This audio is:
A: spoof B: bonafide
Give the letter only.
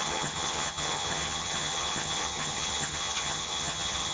A